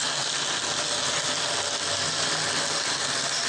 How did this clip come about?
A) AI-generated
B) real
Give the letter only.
B